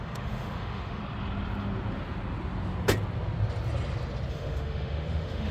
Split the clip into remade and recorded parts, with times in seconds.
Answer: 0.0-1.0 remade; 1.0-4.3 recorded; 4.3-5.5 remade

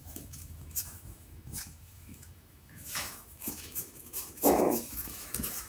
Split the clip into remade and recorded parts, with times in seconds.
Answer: 0.0-5.7 remade